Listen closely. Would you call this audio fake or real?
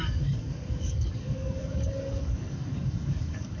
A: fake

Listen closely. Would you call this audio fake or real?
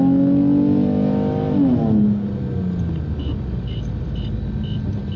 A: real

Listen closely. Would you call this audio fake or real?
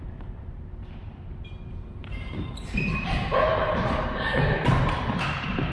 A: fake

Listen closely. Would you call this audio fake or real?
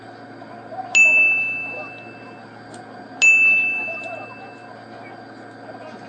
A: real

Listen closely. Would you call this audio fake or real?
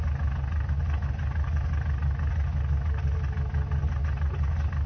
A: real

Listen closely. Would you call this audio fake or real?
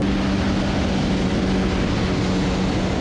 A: real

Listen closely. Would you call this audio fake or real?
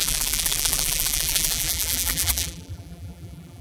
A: fake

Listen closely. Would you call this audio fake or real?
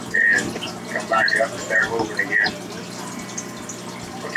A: real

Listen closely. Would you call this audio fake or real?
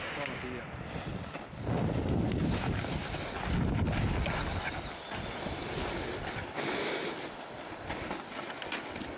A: real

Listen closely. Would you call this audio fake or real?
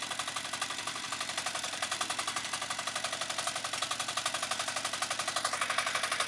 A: real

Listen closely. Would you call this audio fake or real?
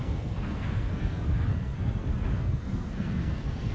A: fake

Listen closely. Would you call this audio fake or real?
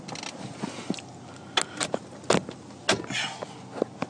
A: real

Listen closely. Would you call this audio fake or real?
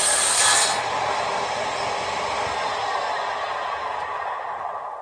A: real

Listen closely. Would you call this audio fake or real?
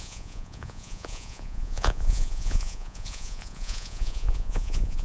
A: fake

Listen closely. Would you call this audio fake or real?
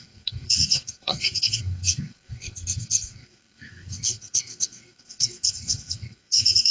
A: fake